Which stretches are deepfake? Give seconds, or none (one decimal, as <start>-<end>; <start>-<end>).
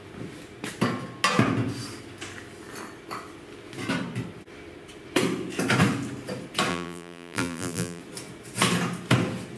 6.7-8.0